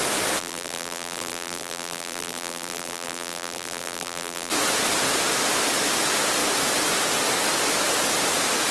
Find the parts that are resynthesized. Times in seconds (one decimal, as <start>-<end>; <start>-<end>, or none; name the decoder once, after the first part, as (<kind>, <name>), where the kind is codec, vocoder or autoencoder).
0.4-4.5 (vocoder, BigVGAN v2)